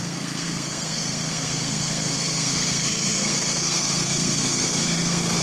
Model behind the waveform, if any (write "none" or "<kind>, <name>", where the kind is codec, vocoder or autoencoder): codec, SNAC